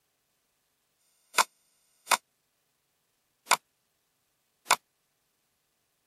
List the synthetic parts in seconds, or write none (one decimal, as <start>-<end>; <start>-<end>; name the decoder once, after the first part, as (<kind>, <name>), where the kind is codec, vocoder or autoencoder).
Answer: 1.0-2.2 (autoencoder, DAC-VAE)